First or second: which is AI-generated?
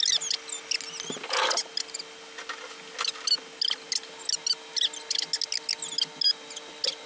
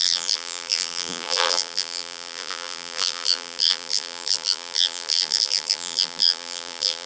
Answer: second